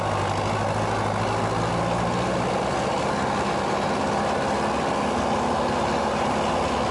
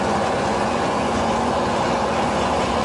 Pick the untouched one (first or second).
first